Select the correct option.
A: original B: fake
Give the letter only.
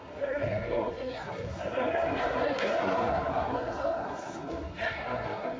B